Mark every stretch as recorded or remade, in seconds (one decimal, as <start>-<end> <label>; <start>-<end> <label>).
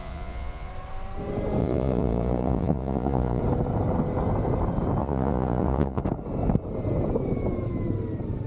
0.0-0.7 remade; 0.7-1.6 recorded; 1.6-3.4 remade; 3.4-5.0 recorded; 5.0-6.0 remade; 6.0-8.5 recorded